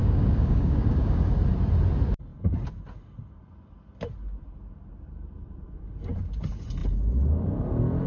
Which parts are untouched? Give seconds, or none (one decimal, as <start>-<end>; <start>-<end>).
1.3-8.1